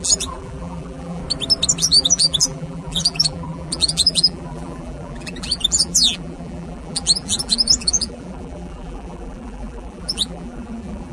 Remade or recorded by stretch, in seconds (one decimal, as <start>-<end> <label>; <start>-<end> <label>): 0.0-1.2 remade; 1.2-1.8 recorded; 1.8-11.1 remade